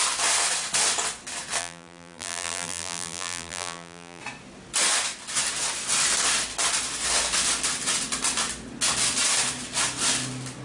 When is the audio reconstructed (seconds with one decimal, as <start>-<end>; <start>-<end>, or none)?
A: 1.6-4.2